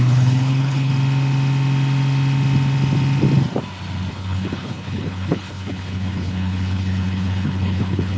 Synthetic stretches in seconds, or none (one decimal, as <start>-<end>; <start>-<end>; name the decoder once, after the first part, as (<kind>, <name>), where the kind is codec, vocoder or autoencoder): 0.0-0.9 (codec, HILCodec); 4.1-8.2